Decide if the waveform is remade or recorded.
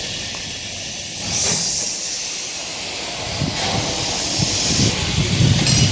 recorded